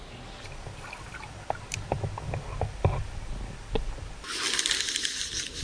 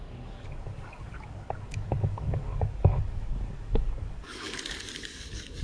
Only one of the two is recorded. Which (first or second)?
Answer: first